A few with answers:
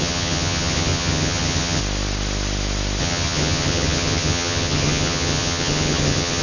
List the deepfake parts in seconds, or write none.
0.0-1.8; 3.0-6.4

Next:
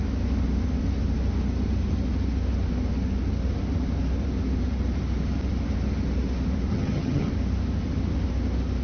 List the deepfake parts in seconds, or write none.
6.7-7.3

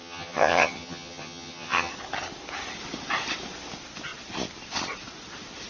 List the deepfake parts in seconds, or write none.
0.0-1.9